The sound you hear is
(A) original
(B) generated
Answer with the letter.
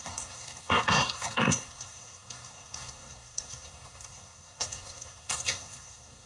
B